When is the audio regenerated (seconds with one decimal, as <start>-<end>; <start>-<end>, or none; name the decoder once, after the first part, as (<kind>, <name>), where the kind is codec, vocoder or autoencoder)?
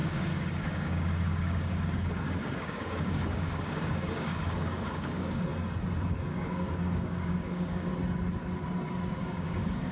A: 0.0-5.5 (codec, DAC); 6.1-7.9; 9.2-9.9